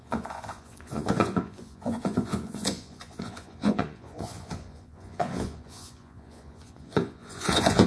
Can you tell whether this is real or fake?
fake